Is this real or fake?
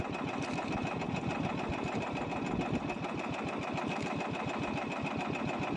real